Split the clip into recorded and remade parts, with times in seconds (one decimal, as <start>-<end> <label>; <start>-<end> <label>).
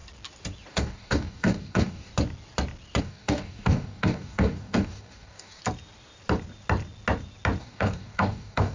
0.0-0.7 recorded; 0.7-2.1 remade; 2.1-3.0 recorded; 3.0-5.6 remade; 5.6-7.6 recorded; 7.6-8.7 remade